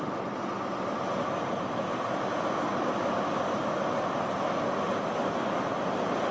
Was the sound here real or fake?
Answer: real